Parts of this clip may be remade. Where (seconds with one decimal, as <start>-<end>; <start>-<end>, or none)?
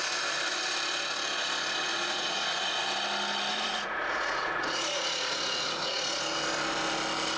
1.9-2.8; 3.5-6.2